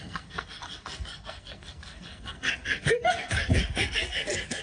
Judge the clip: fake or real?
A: fake